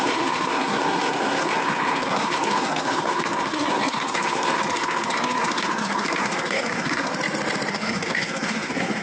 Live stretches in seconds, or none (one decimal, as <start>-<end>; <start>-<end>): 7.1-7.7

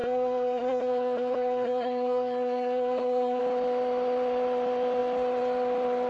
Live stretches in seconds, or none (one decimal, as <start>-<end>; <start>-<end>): 3.4-6.1

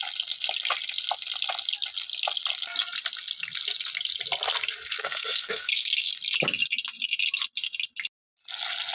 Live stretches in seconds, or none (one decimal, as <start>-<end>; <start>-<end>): 0.0-5.0; 6.1-8.9

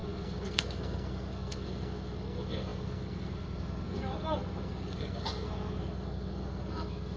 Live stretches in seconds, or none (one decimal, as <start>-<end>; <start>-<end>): none

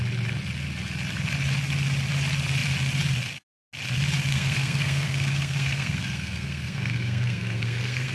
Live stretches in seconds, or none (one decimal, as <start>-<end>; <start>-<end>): 0.0-4.3

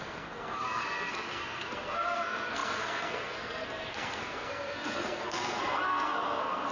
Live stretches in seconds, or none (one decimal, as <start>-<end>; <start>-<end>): none

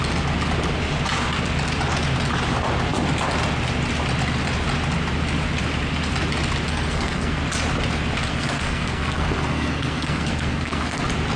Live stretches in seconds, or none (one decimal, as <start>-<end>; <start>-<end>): 0.0-6.7; 7.4-8.3; 11.0-11.4